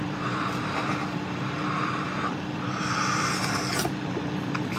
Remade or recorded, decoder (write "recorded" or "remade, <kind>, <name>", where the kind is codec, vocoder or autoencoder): remade, vocoder, BigVGAN v2